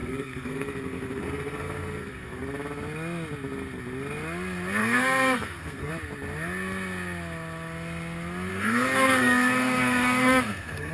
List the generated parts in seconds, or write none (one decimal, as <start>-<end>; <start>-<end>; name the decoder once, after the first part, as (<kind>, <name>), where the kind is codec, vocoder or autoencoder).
0.0-2.4 (codec, SNAC); 4.8-5.9; 8.5-10.9